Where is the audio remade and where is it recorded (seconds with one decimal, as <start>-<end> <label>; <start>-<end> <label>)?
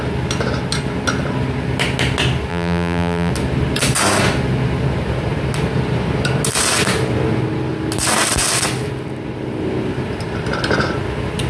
0.0-2.5 recorded; 2.5-3.3 remade; 3.3-11.5 recorded